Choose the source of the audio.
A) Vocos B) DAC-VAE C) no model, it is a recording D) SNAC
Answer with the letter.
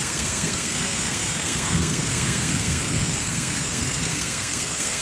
D